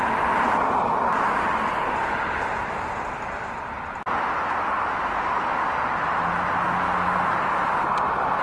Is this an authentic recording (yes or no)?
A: yes